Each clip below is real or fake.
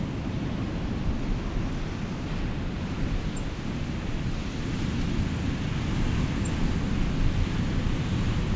real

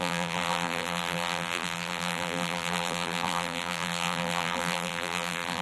fake